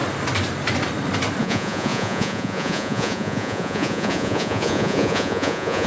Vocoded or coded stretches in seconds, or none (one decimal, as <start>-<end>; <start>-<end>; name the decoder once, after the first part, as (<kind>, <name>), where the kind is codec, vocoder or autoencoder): 1.4-5.9 (vocoder, Vocos)